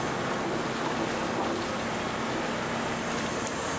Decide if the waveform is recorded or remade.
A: recorded